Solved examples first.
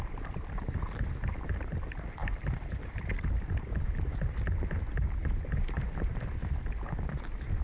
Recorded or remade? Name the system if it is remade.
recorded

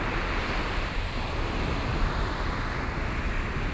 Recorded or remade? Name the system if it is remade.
recorded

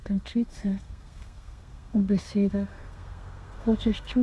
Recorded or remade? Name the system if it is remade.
remade, codec, SNAC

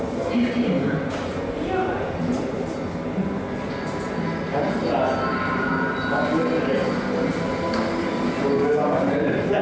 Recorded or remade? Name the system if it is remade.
recorded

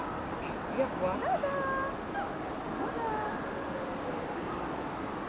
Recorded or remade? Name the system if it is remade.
recorded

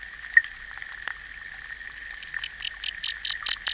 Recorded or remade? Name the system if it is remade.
recorded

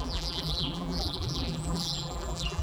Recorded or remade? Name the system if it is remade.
remade, vocoder, BigVGAN v2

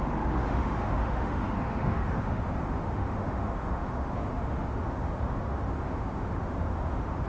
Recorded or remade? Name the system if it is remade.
remade, autoencoder, DAC-VAE